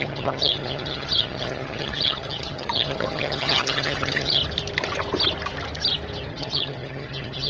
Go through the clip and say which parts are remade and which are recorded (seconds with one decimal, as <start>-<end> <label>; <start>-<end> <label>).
0.0-4.4 remade; 4.4-6.3 recorded; 6.3-7.5 remade